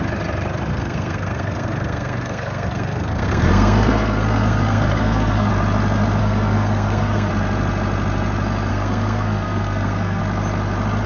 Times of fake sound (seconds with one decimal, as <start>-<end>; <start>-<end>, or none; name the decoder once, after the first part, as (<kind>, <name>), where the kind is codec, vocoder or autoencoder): 0.7-5.5 (codec, SNAC); 6.2-7.3; 8.7-10.2